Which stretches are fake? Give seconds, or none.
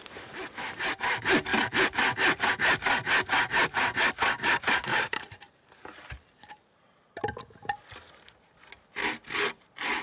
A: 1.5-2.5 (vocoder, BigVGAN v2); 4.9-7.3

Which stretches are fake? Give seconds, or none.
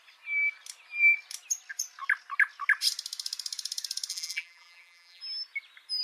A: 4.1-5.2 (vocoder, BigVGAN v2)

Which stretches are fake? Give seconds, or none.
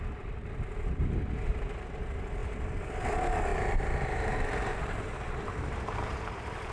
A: 3.5-6.7 (vocoder, BigVGAN v2)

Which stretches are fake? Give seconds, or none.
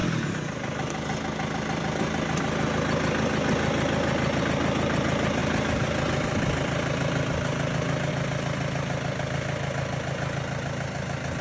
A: none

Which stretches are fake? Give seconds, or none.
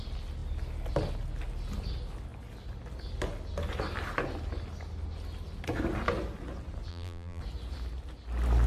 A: 6.9-7.4 (vocoder, BigVGAN v2)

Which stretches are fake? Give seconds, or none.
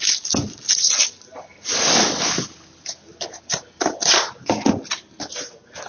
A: 0.4-3.9 (vocoder, BigVGAN v2)